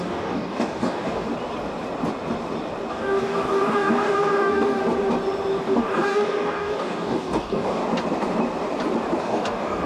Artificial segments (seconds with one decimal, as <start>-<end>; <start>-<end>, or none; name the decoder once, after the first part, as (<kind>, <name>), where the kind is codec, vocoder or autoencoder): 0.0-1.3 (codec, DAC); 2.9-4.8; 5.6-7.8; 9.2-9.9